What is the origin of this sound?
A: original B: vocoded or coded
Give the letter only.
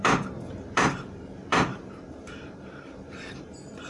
B